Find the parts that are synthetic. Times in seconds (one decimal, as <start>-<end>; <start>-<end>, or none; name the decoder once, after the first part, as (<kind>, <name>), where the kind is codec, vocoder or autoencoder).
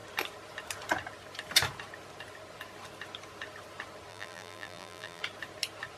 4.1-5.2 (vocoder, BigVGAN v2)